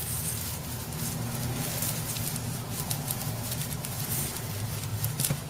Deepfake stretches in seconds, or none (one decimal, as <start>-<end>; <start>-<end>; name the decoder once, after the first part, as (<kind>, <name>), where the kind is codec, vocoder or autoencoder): 3.2-5.5 (vocoder, BigVGAN v2)